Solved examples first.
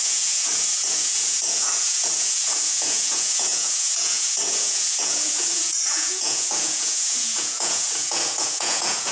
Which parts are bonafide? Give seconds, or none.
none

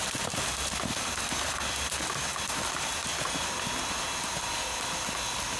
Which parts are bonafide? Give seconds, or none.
0.0-5.6

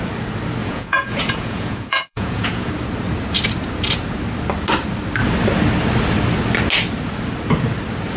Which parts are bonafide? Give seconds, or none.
0.0-0.6; 2.7-8.2

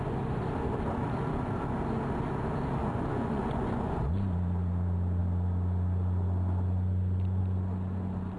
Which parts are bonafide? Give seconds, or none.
0.0-2.8; 4.0-8.4

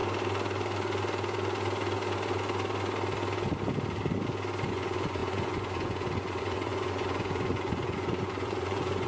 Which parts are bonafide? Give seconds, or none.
0.0-4.7

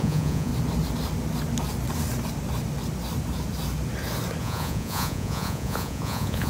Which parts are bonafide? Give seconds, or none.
0.5-4.4